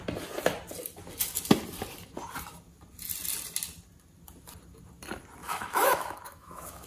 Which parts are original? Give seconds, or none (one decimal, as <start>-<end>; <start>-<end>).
0.0-5.4